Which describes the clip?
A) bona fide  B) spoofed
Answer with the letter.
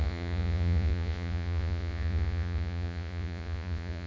B